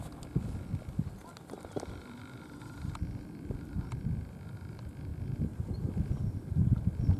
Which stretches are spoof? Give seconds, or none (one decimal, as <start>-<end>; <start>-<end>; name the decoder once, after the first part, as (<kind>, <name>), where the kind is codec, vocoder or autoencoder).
none